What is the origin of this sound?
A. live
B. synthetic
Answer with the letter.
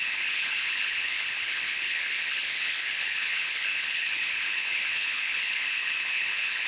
B